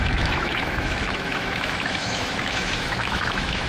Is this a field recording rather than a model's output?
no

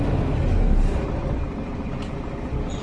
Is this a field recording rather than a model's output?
yes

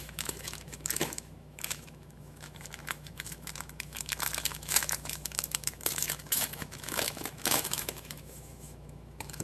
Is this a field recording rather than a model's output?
no